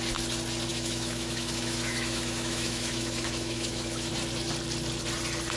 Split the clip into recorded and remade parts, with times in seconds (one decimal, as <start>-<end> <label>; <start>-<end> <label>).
0.0-0.7 recorded; 0.7-4.1 remade; 4.1-5.6 recorded